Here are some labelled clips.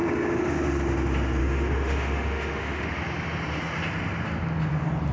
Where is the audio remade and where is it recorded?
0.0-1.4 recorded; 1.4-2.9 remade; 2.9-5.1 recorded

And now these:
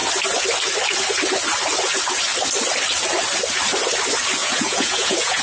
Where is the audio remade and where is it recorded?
0.0-4.4 recorded; 4.4-5.4 remade

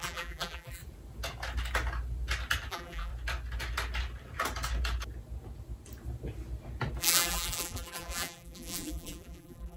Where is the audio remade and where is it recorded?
0.0-0.8 remade; 0.8-2.7 recorded; 2.7-3.1 remade; 3.1-7.0 recorded; 7.0-9.8 remade

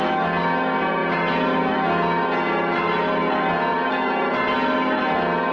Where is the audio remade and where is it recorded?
0.0-5.5 recorded

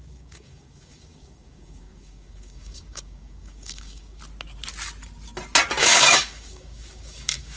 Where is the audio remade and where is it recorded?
0.0-4.2 remade; 4.2-5.8 recorded; 5.8-7.6 remade